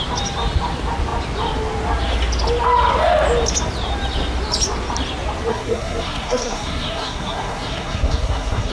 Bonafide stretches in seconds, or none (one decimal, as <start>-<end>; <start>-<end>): 0.0-5.5